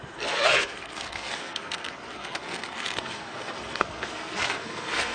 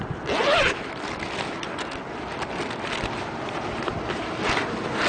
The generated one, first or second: first